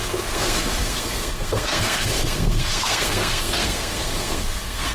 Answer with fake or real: fake